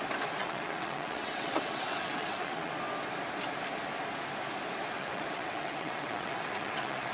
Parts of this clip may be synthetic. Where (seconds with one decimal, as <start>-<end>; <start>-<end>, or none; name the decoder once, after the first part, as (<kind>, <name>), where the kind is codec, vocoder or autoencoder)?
0.4-2.7 (vocoder, WaveNeXt); 4.9-7.1